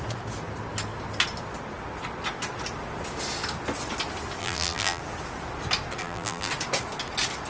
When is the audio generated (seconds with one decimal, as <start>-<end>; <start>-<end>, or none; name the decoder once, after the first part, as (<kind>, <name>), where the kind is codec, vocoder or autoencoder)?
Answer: 4.4-5.0 (vocoder, BigVGAN v2); 6.0-6.5